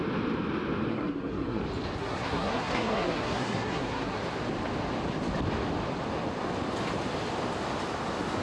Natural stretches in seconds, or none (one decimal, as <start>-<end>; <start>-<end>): 0.0-0.9; 1.6-2.0; 4.2-8.4